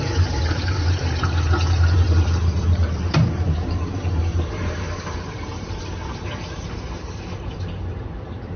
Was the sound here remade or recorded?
remade